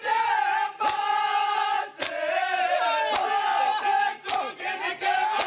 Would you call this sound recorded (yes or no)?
yes